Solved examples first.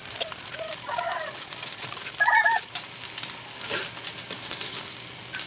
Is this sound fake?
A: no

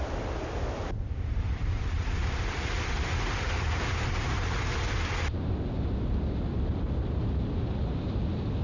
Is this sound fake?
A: no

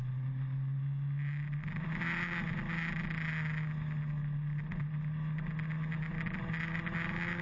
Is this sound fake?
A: no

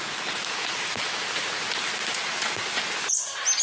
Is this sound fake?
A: no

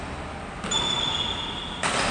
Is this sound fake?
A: no